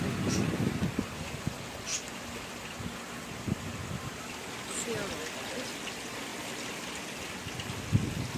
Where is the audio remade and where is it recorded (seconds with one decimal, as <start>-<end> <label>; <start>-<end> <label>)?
0.0-8.4 recorded